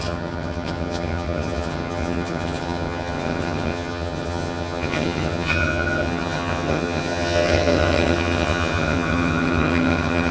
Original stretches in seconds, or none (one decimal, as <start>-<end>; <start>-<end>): none

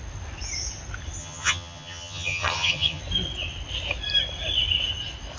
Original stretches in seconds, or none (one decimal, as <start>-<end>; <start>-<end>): 0.0-1.2; 3.0-5.4

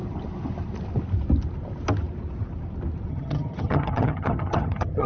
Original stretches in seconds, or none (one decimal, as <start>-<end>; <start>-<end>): 0.0-3.1